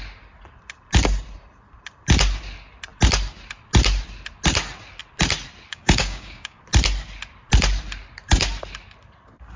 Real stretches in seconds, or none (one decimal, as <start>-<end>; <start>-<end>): 0.0-5.7; 6.6-9.6